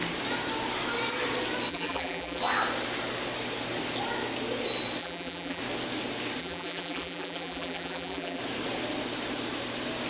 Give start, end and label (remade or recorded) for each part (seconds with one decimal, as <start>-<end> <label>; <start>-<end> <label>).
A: 0.0-1.7 recorded; 1.7-2.4 remade; 2.4-5.0 recorded; 5.0-5.6 remade; 5.6-6.4 recorded; 6.4-8.4 remade; 8.4-10.1 recorded